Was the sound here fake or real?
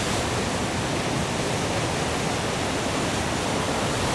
real